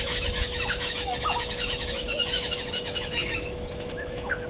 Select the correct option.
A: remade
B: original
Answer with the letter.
A